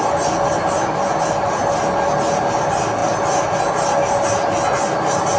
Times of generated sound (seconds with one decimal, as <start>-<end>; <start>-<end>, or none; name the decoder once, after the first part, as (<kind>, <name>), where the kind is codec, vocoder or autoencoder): none